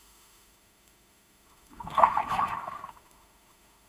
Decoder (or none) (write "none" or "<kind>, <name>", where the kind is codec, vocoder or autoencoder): autoencoder, DAC-VAE